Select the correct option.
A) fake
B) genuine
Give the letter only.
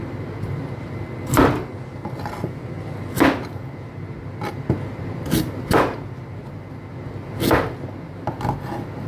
B